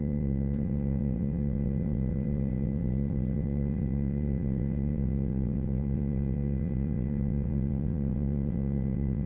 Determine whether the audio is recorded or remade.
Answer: remade